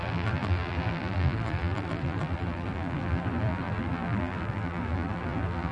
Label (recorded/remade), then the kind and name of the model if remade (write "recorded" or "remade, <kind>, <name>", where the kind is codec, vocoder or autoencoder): remade, vocoder, BigVGAN v2